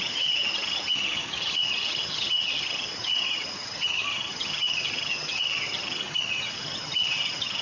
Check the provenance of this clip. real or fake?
fake